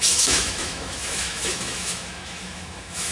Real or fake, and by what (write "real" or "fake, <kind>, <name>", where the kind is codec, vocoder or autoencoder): fake, autoencoder, DAC-VAE